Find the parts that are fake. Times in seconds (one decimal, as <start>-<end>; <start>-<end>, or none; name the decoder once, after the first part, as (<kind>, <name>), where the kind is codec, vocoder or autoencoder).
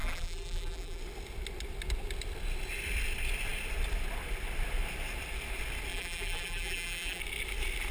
0.0-1.0 (vocoder, BigVGAN v2); 5.9-7.2